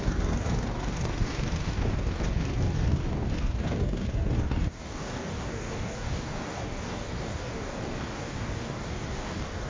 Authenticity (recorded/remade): remade